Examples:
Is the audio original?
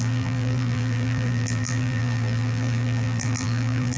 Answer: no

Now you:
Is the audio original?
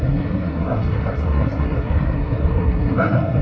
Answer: no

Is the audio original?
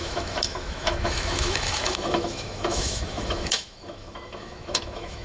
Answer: no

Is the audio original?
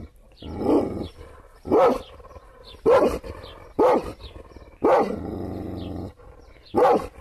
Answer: yes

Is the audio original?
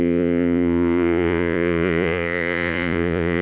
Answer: no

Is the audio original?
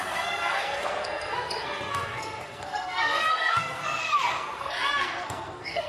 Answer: no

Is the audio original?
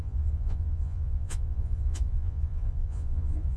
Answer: no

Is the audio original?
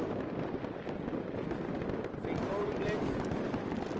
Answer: yes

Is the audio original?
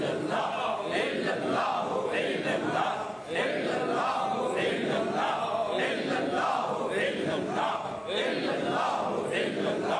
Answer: yes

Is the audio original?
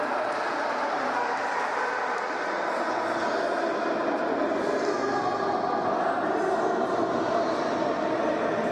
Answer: yes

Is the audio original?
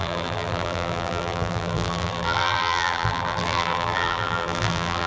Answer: no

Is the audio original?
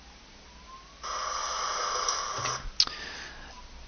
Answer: yes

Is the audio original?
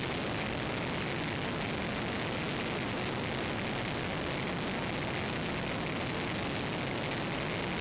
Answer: yes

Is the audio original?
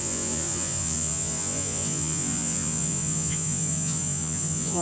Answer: no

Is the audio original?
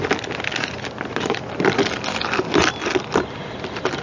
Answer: yes